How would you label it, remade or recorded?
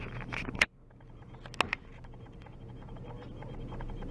recorded